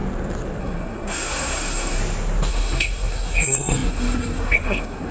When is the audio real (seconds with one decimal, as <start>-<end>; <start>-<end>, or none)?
0.0-0.6; 2.0-2.5